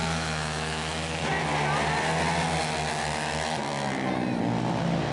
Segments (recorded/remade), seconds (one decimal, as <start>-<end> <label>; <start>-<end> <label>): 0.0-1.2 remade; 1.2-5.1 recorded